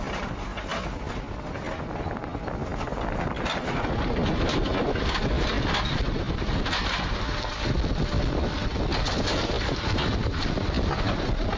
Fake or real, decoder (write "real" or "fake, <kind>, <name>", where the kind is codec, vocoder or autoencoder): real